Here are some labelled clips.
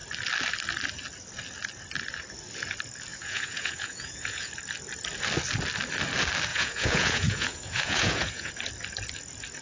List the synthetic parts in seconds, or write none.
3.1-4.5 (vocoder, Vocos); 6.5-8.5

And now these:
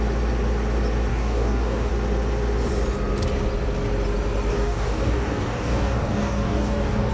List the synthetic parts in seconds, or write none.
1.1-1.9 (codec, DAC); 4.5-7.1

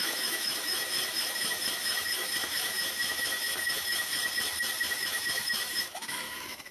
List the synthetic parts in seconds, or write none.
0.0-4.1 (autoencoder, DAC-VAE); 4.8-6.7

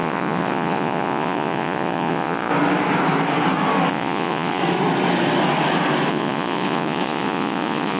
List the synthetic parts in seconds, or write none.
0.0-2.5 (vocoder, Vocos); 3.9-4.6; 6.1-8.0

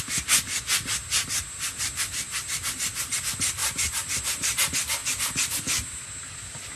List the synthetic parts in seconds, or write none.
none

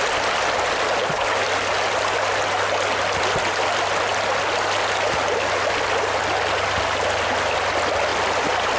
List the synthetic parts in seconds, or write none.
8.1-8.8 (vocoder, BigVGAN v2)